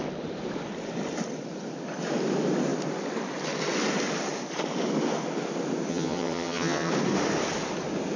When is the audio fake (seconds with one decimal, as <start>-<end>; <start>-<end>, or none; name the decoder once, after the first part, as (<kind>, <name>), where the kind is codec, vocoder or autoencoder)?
5.9-6.9 (vocoder, HiFi-GAN)